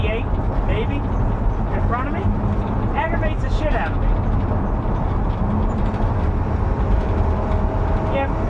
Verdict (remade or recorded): recorded